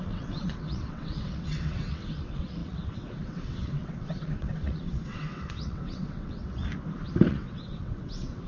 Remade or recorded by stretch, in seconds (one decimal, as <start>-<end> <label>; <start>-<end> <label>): 0.0-6.6 remade; 6.6-7.3 recorded; 7.3-8.5 remade